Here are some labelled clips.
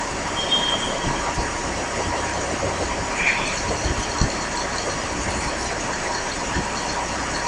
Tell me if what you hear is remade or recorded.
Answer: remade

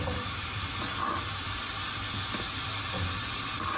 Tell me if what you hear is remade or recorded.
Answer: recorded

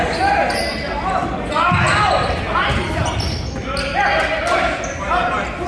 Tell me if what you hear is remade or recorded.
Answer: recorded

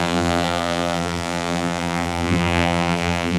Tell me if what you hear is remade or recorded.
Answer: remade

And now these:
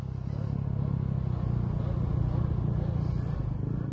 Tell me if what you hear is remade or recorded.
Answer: recorded